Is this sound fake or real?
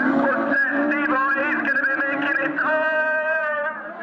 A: fake